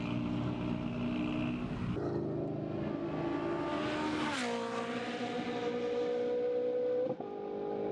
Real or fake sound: real